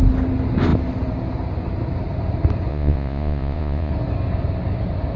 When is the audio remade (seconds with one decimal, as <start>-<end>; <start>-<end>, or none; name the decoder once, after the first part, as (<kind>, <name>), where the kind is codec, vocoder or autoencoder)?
2.7-3.9 (vocoder, Vocos)